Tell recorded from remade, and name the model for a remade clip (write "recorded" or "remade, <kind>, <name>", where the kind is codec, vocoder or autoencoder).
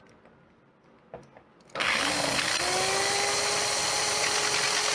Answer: recorded